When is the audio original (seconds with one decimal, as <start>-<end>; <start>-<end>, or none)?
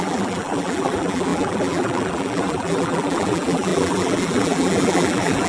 none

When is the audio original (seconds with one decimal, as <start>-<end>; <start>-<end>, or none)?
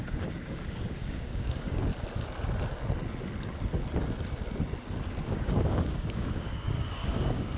1.9-5.2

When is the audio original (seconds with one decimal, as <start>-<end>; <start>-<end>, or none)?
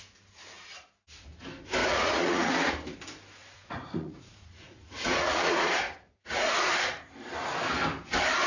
0.0-1.8; 2.7-3.4; 7.1-8.5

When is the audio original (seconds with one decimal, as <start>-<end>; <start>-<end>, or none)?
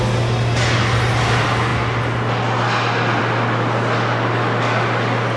0.0-5.4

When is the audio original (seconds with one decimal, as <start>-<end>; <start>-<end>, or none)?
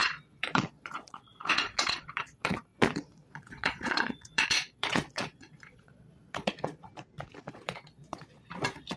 6.9-7.5